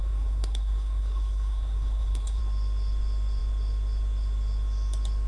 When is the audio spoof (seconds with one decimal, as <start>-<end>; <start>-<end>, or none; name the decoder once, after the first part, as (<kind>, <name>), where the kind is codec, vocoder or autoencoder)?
0.0-2.4 (codec, SNAC)